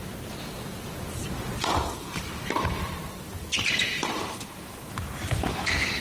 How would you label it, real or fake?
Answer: fake